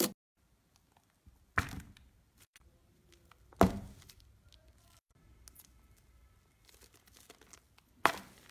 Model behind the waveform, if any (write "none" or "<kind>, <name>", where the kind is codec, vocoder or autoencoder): none